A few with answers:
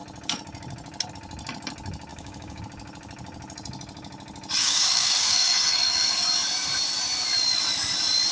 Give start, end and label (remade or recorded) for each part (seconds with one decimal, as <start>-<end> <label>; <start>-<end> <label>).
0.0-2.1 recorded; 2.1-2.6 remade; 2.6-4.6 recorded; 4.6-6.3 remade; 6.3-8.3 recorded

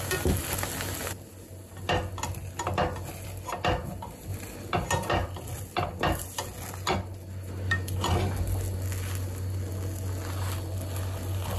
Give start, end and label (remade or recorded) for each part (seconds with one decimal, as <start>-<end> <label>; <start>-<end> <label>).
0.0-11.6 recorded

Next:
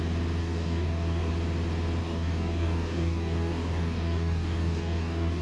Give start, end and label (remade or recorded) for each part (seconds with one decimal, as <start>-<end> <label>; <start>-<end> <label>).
0.0-0.4 recorded; 0.4-1.3 remade; 1.3-2.0 recorded; 2.0-5.4 remade

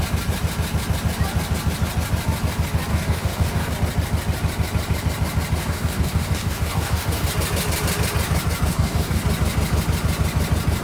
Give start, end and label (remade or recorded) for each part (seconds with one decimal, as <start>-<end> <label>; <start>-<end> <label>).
0.0-2.9 recorded; 2.9-3.7 remade; 3.7-5.6 recorded; 5.6-7.3 remade; 7.3-8.7 recorded; 8.7-9.2 remade; 9.2-10.8 recorded